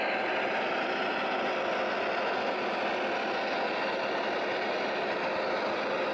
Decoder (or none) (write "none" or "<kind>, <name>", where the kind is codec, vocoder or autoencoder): none